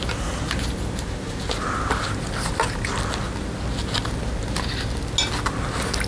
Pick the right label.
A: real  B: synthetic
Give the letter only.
A